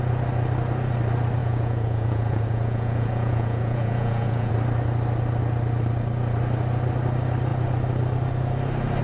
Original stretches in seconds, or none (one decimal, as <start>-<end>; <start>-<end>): 0.0-1.4; 4.5-9.0